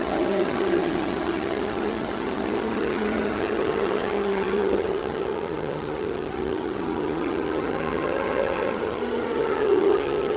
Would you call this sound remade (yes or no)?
yes